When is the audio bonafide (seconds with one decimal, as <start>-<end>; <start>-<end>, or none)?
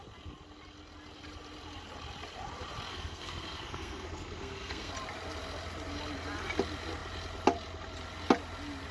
0.0-2.9; 4.9-8.9